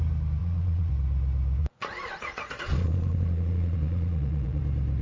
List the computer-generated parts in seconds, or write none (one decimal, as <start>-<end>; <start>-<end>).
0.4-0.9; 1.6-4.6